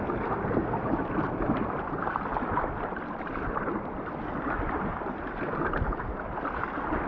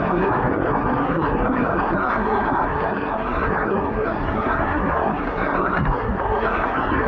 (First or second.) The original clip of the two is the first